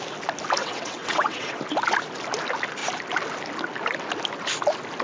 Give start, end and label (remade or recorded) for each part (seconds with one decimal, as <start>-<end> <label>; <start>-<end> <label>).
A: 0.0-0.6 recorded; 0.6-1.6 remade; 1.6-5.0 recorded